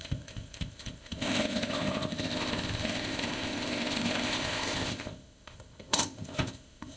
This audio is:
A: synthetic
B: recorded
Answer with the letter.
A